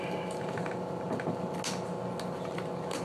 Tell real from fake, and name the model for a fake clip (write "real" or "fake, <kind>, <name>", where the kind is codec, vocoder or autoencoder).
real